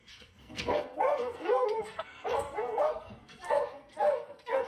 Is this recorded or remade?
remade